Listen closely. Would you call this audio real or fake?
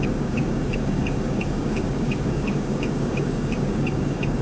fake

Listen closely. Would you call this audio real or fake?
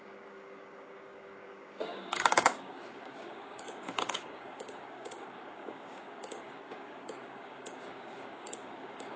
fake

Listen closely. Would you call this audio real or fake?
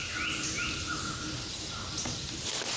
real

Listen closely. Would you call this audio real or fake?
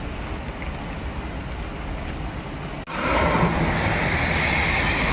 real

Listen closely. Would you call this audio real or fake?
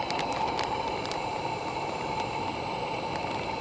real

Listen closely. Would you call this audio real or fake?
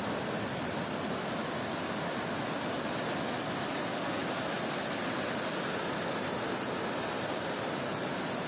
real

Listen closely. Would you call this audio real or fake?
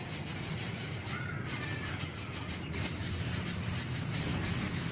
real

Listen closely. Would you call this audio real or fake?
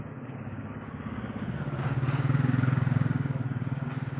fake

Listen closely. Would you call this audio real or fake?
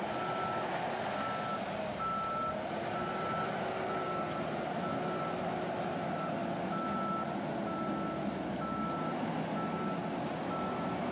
real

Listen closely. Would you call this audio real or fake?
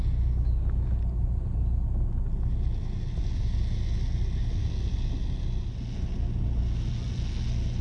real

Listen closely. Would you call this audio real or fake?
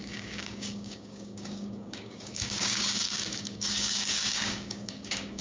fake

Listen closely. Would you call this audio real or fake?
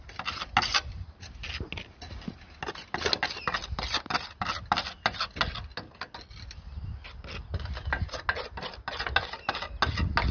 real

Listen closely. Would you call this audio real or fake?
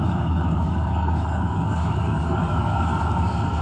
fake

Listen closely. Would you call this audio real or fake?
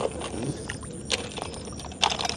real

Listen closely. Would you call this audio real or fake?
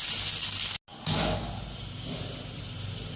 real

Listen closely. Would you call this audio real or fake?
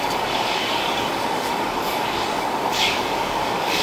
fake